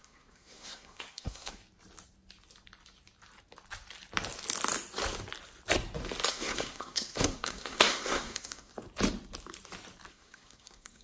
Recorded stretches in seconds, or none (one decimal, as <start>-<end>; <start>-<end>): 1.6-6.3; 8.7-10.1